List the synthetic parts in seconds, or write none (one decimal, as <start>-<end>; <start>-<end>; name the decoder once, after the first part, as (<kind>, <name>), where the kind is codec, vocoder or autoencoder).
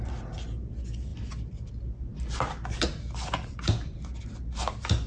none